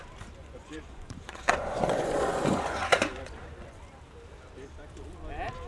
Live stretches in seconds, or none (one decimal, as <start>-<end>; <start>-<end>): 0.0-0.4; 3.8-5.7